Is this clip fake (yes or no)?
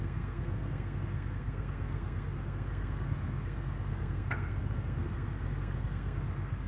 yes